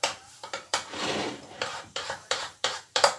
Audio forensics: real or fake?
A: fake